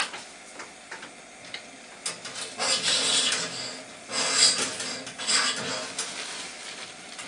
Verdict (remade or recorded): recorded